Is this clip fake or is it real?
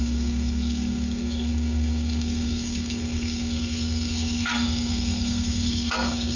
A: fake